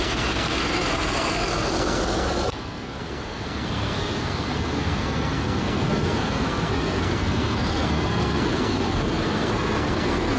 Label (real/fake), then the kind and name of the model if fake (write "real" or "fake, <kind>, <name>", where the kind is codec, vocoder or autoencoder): fake, codec, SNAC